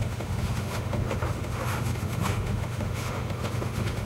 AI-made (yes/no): yes